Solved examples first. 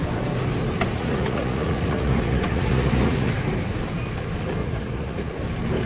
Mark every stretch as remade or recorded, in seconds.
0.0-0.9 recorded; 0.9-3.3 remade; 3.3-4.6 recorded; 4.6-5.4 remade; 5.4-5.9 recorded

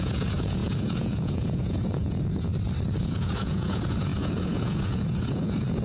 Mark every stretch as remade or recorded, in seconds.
0.0-2.5 remade; 2.5-3.0 recorded; 3.0-5.8 remade

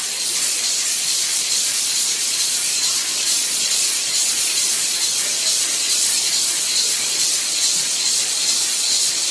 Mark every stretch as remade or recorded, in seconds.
0.0-9.3 remade

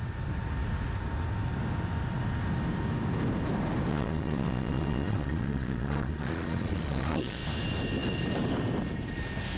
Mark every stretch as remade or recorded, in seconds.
0.0-3.9 recorded; 3.9-7.4 remade; 7.4-9.6 recorded